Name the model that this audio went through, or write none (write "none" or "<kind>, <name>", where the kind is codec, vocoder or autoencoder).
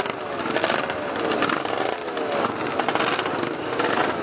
none